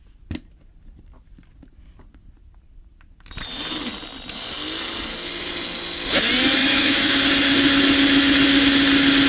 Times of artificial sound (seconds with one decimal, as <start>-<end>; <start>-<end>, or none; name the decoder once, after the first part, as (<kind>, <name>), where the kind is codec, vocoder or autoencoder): 6.6-7.2 (autoencoder, DAC-VAE)